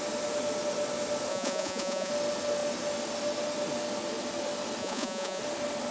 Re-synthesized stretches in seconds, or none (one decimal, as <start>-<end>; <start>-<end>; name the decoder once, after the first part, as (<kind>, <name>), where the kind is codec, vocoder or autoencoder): 1.3-2.1 (vocoder, Vocos); 4.8-5.4